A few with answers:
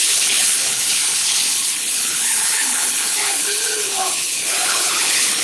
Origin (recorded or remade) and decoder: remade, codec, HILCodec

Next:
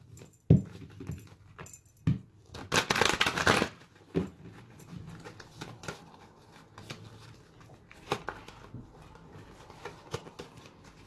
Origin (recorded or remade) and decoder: recorded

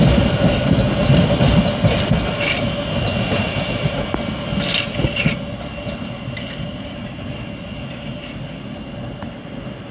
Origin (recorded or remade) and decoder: recorded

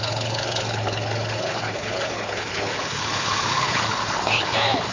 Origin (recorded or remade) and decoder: remade, codec, HILCodec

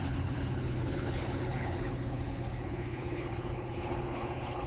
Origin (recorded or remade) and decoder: remade, codec, HILCodec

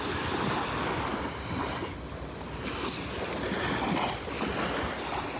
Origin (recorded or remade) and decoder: recorded